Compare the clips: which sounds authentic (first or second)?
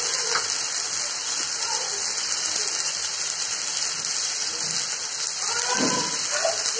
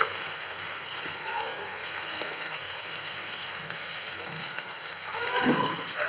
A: first